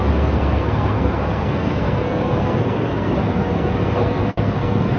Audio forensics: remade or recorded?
remade